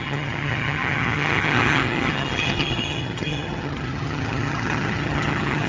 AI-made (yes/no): yes